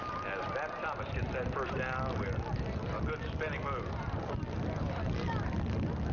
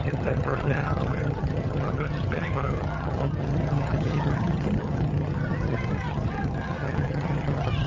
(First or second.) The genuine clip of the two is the first